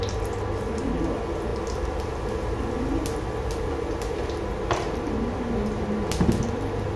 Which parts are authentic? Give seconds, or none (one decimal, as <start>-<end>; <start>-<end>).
0.0-7.0